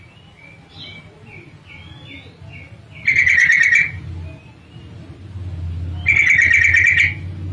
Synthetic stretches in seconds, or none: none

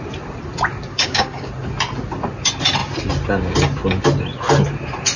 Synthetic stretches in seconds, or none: 0.9-1.5 (codec, DAC)

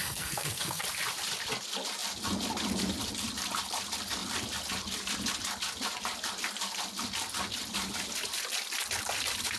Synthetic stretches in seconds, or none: 0.0-0.8 (codec, SNAC)

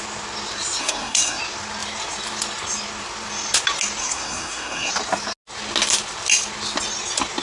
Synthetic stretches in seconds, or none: 0.8-1.4 (codec, SNAC); 4.0-4.9

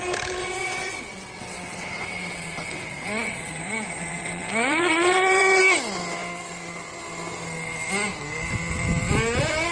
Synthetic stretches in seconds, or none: 0.4-5.6 (vocoder, WaveNeXt)

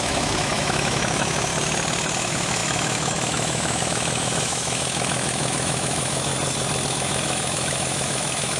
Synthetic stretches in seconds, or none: 0.0-1.5 (autoencoder, DAC-VAE); 2.2-6.3; 6.9-8.6